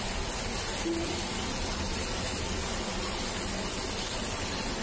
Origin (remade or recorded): recorded